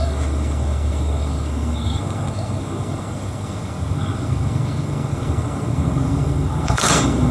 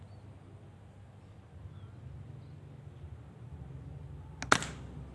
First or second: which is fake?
first